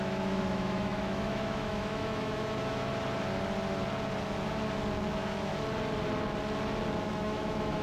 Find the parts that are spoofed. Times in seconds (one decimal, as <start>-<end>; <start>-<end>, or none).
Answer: 0.0-2.9; 5.1-5.5; 7.1-7.8